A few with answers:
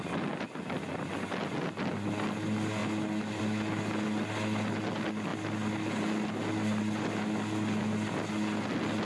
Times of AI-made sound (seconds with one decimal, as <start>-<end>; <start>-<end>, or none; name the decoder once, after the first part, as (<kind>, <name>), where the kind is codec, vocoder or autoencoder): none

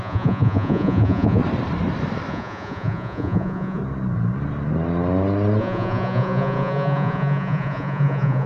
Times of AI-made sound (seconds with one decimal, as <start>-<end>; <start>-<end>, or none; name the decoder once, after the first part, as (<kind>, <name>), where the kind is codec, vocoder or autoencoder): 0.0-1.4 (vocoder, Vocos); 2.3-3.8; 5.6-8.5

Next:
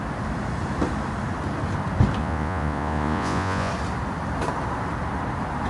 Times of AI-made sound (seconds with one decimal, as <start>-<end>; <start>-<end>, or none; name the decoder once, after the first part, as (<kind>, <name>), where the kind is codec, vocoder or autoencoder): 2.2-3.7 (vocoder, Vocos)